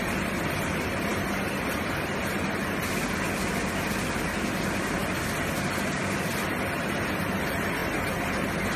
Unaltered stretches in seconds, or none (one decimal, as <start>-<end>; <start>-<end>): 0.0-8.8